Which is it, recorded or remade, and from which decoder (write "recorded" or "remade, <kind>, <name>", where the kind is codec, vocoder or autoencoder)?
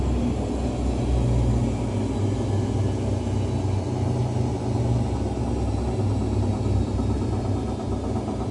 recorded